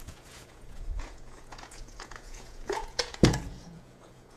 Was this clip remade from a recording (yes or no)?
yes